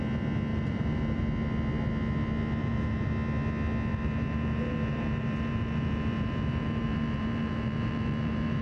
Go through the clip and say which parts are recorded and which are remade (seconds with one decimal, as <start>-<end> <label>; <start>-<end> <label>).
0.0-0.5 recorded; 0.5-1.2 remade; 1.2-2.6 recorded; 2.6-3.1 remade; 3.1-3.9 recorded; 3.9-8.6 remade

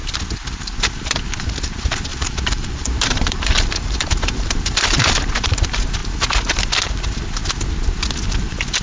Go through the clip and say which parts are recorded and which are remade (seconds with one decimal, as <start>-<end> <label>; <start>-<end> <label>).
0.0-2.1 recorded; 2.1-5.5 remade; 5.5-8.8 recorded

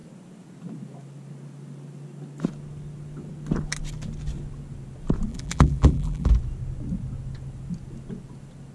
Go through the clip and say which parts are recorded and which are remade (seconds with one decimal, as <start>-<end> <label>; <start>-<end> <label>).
0.0-5.3 recorded; 5.3-6.3 remade; 6.3-8.7 recorded

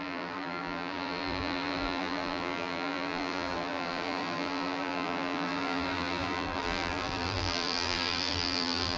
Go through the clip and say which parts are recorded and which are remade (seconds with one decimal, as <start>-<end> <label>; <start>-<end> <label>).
0.0-9.0 remade